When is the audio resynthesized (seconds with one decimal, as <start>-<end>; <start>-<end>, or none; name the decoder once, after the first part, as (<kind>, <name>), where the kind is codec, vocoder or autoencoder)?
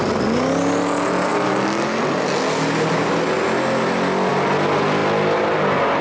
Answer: none